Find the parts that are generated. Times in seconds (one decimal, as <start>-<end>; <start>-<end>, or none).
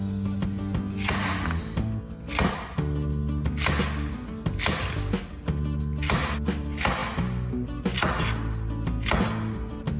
none